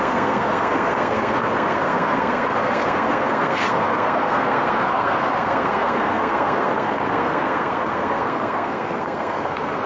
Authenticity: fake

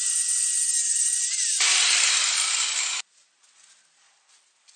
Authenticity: real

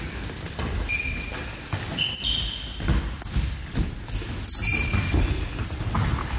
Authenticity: real